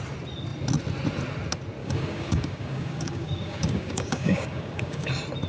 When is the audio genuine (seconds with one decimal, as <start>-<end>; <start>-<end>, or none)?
0.0-1.8; 5.1-5.5